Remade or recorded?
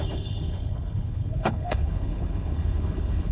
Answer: remade